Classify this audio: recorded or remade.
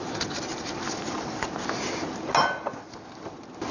recorded